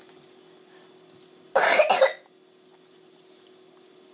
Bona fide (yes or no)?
yes